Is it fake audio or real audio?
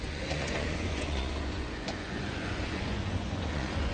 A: fake